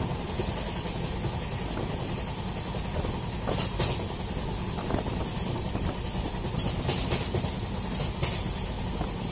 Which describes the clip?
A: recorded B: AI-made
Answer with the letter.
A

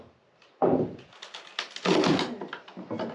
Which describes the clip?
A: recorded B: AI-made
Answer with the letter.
A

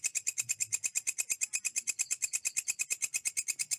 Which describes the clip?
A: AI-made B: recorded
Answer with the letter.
B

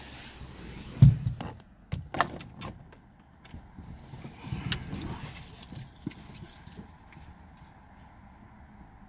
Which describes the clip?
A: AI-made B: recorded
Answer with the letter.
B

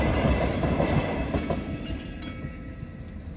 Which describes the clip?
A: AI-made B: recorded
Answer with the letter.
B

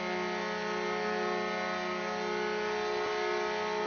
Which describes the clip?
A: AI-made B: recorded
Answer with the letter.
B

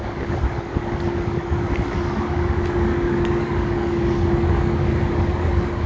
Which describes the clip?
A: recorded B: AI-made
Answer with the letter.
B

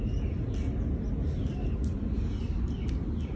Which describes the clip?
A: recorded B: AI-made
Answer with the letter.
A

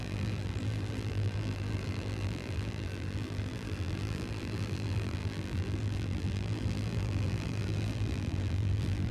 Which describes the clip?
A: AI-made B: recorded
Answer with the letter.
A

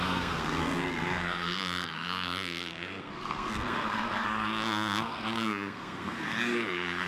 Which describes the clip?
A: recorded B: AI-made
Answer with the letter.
B